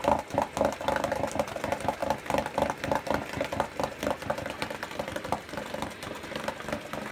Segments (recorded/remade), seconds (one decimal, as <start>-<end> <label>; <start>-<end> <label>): 0.0-7.1 recorded